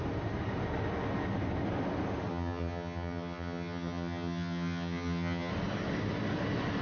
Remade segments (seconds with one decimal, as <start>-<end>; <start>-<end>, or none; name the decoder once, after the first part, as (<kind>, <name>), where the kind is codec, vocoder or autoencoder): 2.3-5.5 (vocoder, HiFi-GAN)